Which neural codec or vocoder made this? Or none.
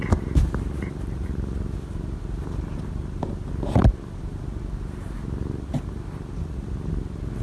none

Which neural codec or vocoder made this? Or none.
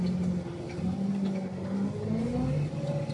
none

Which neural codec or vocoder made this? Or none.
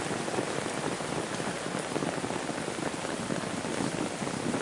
none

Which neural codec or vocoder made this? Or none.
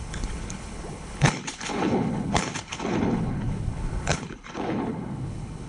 codec, HILCodec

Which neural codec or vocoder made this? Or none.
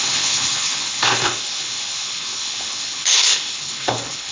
codec, HILCodec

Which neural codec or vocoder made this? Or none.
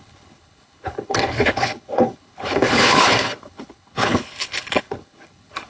codec, HILCodec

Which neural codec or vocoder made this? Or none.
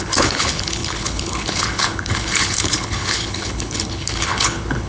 codec, HILCodec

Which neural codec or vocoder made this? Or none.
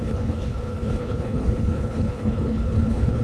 codec, HILCodec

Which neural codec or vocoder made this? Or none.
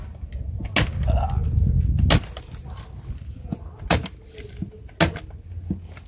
none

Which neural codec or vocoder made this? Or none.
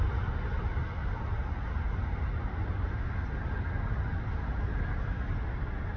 none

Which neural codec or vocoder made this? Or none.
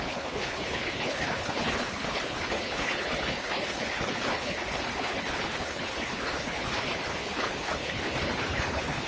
codec, HILCodec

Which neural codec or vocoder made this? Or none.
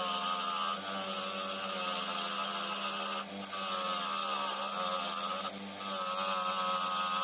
none